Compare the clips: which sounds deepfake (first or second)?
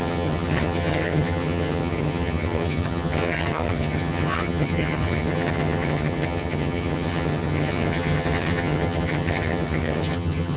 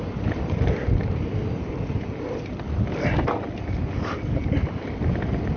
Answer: first